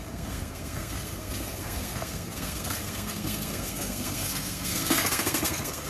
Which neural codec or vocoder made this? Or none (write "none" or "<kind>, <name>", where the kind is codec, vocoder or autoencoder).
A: codec, SNAC